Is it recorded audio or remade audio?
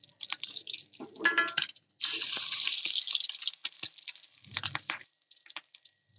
recorded